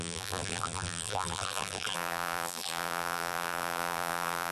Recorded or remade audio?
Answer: remade